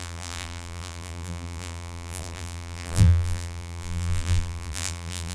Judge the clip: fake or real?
fake